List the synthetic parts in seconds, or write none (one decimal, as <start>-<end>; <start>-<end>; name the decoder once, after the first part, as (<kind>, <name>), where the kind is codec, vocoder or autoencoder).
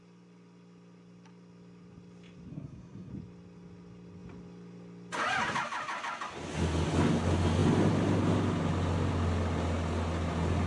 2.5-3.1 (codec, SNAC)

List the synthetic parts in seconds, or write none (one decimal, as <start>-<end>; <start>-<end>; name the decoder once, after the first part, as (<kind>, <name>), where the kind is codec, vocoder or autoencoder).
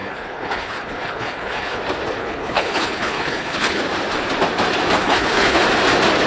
0.0-1.8 (codec, HILCodec); 2.2-3.8; 5.0-5.6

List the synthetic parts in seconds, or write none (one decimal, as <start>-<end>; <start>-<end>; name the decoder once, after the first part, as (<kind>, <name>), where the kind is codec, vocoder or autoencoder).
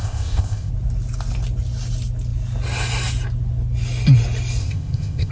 0.0-0.7 (codec, ZipCodec); 4.6-5.3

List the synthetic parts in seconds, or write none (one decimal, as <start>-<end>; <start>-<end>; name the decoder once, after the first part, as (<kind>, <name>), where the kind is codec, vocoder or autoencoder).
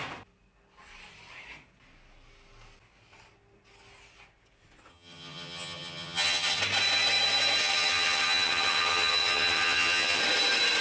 4.9-6.6 (vocoder, HiFi-GAN); 7.6-10.2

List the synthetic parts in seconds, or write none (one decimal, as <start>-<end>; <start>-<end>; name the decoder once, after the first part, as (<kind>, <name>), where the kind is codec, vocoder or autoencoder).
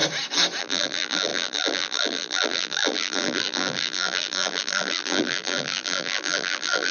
0.6-6.9 (vocoder, BigVGAN v2)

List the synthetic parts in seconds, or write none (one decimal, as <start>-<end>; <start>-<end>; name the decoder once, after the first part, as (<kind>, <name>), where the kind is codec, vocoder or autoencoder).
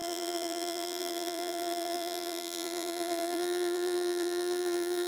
0.0-5.1 (vocoder, BigVGAN v2)